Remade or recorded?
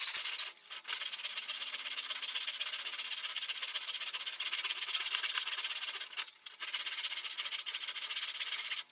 recorded